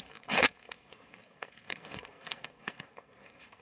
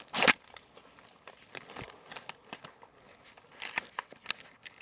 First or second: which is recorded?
second